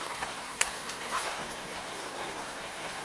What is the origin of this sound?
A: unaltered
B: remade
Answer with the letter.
B